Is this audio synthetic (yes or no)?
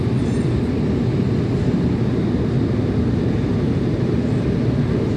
no